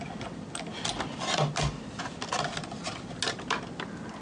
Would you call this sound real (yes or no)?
yes